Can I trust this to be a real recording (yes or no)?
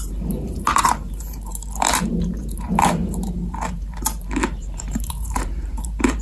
no